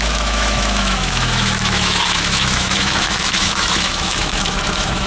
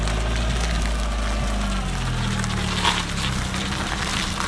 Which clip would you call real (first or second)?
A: second